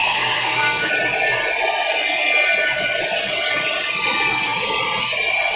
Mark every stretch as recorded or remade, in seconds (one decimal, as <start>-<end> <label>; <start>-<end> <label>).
0.0-0.9 remade; 0.9-5.6 recorded